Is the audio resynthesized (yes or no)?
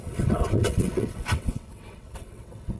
yes